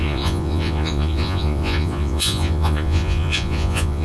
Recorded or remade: remade